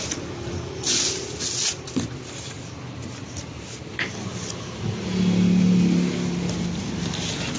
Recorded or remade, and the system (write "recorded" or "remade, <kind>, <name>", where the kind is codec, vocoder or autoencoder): recorded